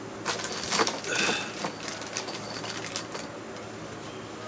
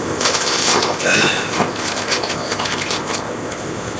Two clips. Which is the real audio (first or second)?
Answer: first